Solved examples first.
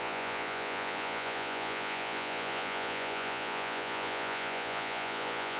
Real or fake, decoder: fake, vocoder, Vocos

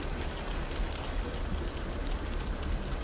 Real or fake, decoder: real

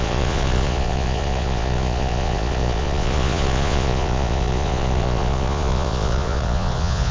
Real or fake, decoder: fake, vocoder, Vocos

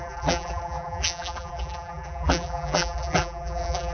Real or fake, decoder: fake, vocoder, BigVGAN v2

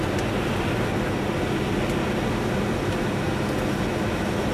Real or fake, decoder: real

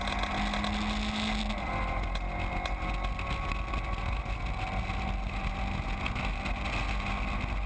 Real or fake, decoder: real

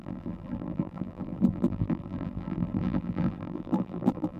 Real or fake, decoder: fake, vocoder, BigVGAN v2